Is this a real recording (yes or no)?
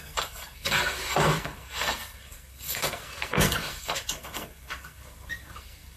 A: no